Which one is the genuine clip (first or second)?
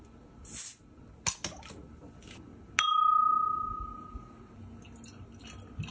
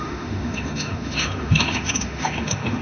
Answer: first